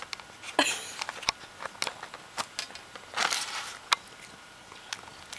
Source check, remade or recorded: recorded